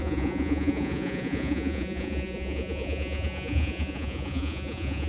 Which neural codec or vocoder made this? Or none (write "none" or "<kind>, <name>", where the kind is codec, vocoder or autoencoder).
vocoder, Vocos